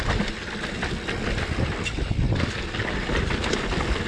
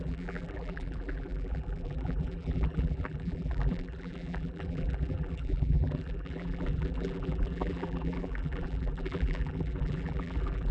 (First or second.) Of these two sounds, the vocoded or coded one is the second